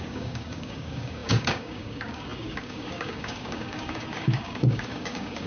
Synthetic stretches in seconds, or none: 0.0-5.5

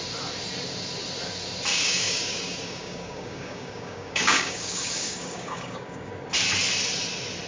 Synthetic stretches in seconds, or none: 1.7-6.1

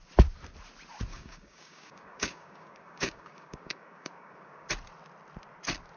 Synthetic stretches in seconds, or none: 1.1-4.7

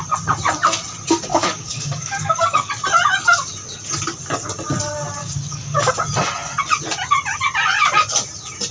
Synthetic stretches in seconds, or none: 1.3-2.7; 5.2-5.9